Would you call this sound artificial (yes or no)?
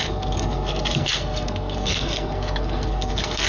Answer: yes